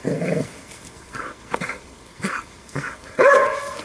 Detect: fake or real fake